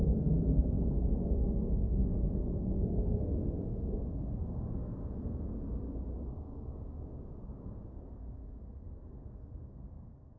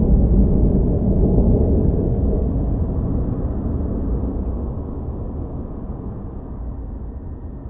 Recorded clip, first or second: second